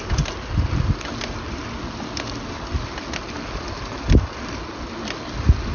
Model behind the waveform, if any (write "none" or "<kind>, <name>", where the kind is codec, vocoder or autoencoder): none